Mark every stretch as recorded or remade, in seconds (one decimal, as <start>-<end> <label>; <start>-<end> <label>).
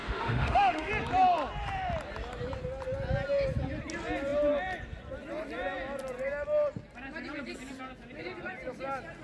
0.0-0.9 remade; 0.9-9.2 recorded